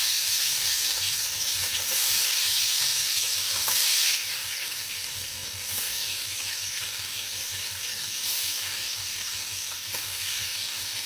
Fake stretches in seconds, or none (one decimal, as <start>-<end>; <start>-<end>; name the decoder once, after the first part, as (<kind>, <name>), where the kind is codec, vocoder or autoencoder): 0.0-11.1 (codec, DAC)

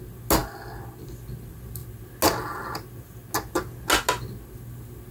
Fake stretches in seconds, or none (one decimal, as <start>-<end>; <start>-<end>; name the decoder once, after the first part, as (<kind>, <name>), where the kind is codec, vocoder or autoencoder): none

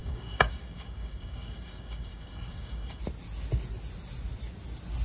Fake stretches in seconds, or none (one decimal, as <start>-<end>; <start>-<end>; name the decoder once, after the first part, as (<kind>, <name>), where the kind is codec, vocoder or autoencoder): 0.0-3.0 (codec, DAC)

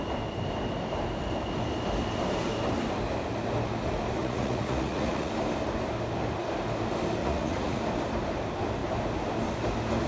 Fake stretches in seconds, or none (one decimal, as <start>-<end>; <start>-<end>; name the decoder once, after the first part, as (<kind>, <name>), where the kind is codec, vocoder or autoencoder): 4.2-5.3 (vocoder, Vocos); 7.2-7.8

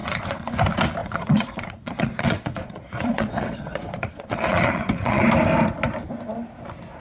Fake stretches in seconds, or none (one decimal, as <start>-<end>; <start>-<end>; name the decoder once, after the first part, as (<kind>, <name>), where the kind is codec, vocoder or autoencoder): 0.0-0.5 (vocoder, Vocos); 1.0-5.2

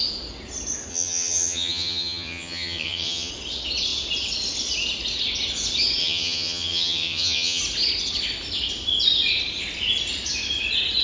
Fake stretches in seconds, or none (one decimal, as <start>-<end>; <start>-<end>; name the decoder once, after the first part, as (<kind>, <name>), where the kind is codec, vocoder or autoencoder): 0.9-3.3 (vocoder, HiFi-GAN); 6.0-7.6